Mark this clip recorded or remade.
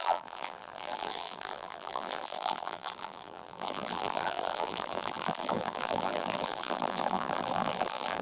remade